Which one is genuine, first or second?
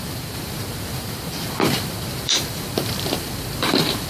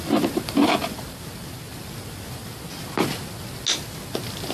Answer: second